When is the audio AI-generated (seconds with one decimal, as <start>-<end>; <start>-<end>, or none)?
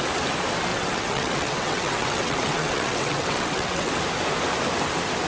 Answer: 0.7-3.9